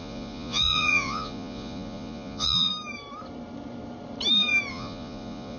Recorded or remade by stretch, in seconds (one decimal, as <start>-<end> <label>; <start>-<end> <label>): 0.0-2.7 remade; 2.7-4.7 recorded; 4.7-5.6 remade